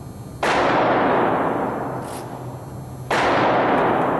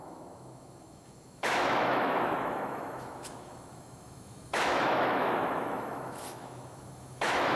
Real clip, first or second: first